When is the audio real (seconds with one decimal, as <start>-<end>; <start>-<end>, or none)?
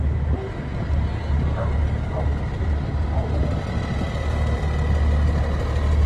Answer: 0.0-6.1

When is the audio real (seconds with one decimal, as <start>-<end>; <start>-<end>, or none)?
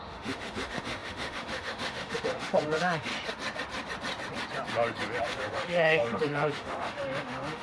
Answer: 3.1-5.2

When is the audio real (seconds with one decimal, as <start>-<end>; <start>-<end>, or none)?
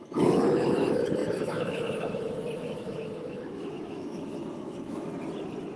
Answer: 5.1-5.8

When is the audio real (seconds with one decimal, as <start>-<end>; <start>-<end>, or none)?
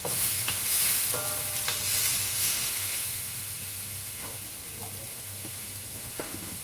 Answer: 1.1-2.2; 4.4-5.1